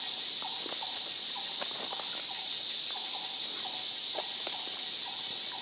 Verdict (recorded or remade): recorded